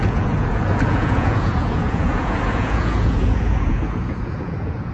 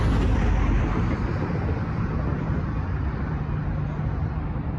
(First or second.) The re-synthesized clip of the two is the first